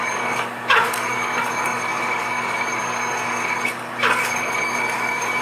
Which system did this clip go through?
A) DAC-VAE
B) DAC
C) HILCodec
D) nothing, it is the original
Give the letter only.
B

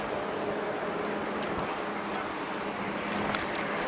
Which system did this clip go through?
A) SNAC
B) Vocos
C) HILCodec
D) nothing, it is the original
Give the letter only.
D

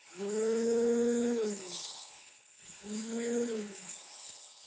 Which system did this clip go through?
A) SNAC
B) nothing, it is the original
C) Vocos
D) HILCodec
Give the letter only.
D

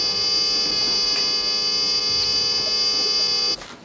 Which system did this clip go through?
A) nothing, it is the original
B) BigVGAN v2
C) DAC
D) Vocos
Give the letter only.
A